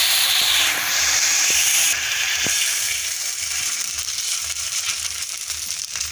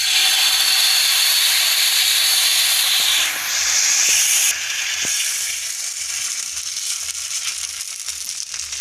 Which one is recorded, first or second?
second